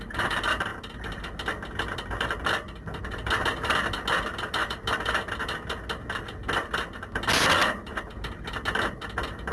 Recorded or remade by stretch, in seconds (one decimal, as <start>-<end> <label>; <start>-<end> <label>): 0.0-4.6 recorded; 4.6-5.1 remade; 5.1-9.5 recorded